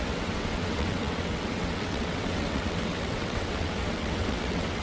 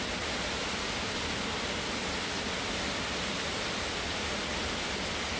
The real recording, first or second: second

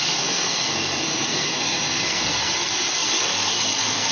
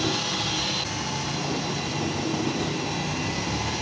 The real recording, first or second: second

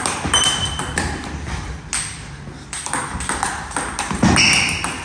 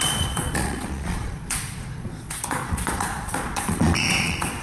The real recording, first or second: first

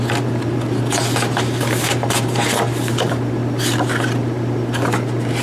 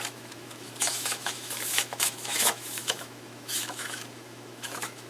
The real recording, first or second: first